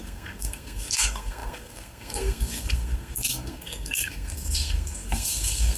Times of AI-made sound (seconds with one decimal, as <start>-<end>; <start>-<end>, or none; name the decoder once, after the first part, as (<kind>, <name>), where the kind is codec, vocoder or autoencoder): 0.0-5.8 (codec, SNAC)